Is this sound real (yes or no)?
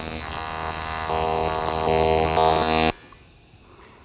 yes